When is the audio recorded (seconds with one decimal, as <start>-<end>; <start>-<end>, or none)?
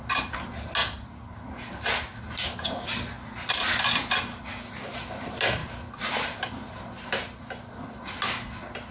0.0-8.9